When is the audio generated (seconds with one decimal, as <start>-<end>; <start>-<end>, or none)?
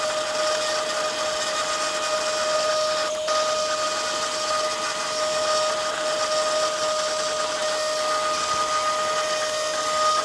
none